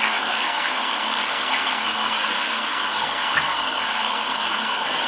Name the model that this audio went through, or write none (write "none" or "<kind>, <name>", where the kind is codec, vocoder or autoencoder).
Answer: codec, SNAC